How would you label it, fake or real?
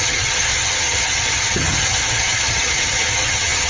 fake